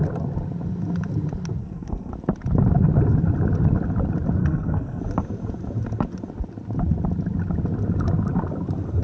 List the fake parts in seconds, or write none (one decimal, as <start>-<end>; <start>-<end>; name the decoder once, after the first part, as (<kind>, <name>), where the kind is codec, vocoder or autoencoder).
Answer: 1.6-2.1 (codec, SNAC); 4.4-5.0